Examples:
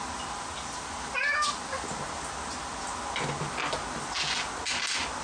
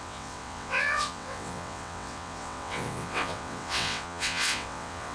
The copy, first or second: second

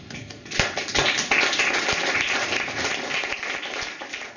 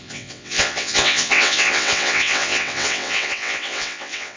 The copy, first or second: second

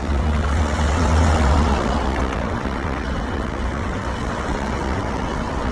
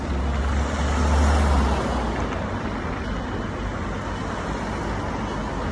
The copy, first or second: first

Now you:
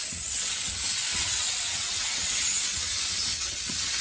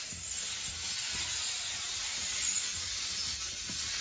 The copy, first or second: first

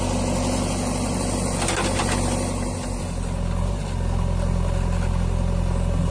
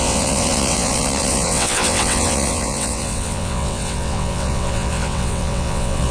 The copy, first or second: second